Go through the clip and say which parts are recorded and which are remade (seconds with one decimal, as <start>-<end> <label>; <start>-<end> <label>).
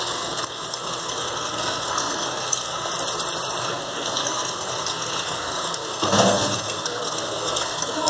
0.0-2.9 remade; 2.9-3.6 recorded; 3.6-8.1 remade